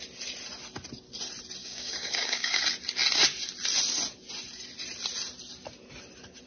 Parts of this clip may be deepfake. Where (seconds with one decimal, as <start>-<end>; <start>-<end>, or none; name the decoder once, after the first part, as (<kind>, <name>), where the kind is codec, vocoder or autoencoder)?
1.6-2.6 (codec, DAC)